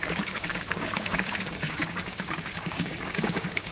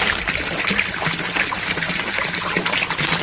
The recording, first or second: second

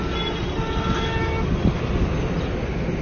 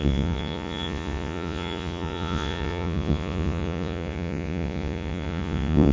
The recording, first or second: first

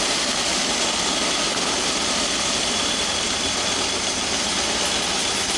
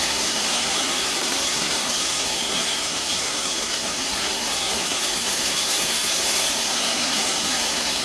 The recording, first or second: first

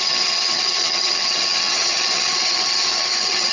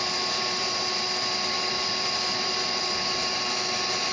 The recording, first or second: second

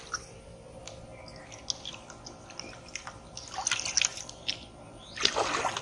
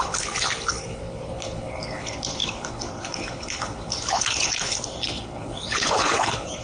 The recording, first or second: first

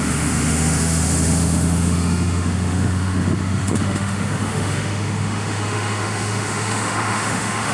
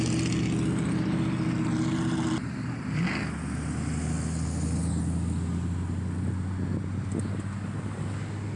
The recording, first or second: second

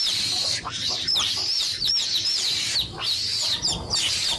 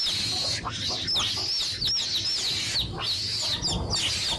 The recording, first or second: second